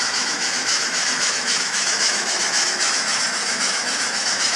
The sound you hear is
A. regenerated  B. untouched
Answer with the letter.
A